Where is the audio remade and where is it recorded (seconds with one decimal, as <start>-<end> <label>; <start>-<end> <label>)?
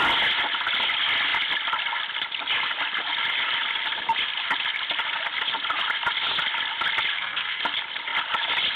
0.0-7.1 recorded; 7.1-7.6 remade; 7.6-8.8 recorded